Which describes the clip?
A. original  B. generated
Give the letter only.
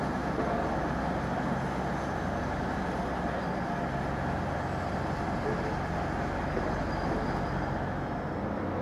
A